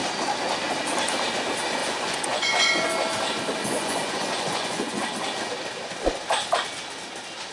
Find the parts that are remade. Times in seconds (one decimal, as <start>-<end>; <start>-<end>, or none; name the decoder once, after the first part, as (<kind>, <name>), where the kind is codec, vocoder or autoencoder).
1.8-2.9 (vocoder, Vocos); 3.6-5.1